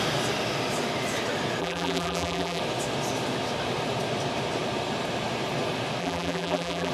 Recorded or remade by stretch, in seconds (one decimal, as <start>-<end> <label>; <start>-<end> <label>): 0.0-1.6 recorded; 1.6-2.6 remade; 2.6-6.0 recorded; 6.0-6.9 remade